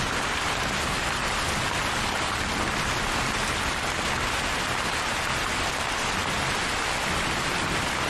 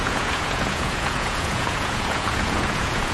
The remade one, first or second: second